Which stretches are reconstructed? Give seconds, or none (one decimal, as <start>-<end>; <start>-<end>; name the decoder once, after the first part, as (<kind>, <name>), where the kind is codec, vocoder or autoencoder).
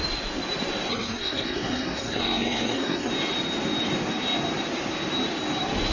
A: 0.9-3.1 (codec, SNAC)